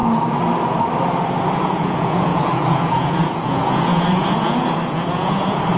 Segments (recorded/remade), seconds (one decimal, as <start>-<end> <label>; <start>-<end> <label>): 0.0-1.5 recorded; 1.5-5.8 remade